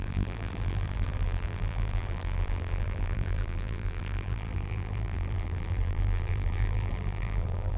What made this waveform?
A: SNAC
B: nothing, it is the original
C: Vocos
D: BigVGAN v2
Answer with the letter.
D